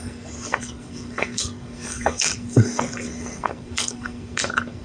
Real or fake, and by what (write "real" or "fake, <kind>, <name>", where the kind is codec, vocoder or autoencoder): fake, codec, SNAC